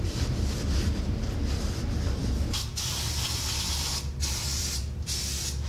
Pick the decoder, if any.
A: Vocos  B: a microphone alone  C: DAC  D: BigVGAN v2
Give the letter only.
D